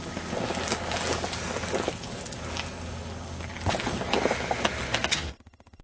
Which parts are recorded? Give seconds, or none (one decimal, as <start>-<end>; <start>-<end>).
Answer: 0.0-5.1